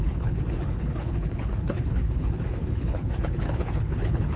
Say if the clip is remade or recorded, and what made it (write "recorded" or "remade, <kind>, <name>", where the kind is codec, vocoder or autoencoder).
remade, codec, HILCodec